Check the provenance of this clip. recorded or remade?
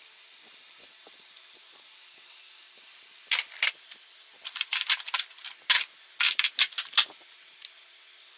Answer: remade